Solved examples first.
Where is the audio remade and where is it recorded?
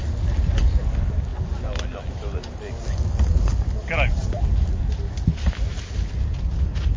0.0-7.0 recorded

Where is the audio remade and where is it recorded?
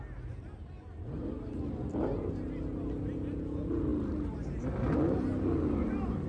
0.0-6.3 recorded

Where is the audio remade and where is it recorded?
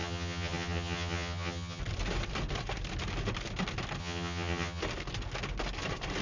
0.0-1.8 remade; 1.8-4.0 recorded; 4.0-4.8 remade; 4.8-6.2 recorded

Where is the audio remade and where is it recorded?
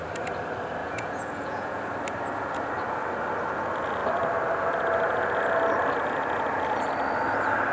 0.0-0.8 recorded; 0.8-1.8 remade; 1.8-7.7 recorded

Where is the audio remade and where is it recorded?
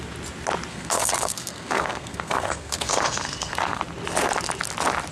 0.0-0.7 recorded; 0.7-3.8 remade; 3.8-5.1 recorded